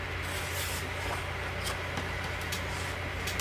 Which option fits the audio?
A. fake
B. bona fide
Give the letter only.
B